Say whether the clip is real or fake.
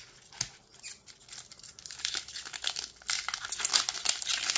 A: real